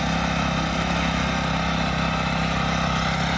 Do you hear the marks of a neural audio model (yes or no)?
no